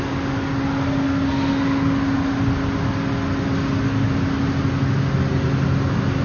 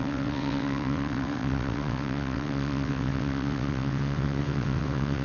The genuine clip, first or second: first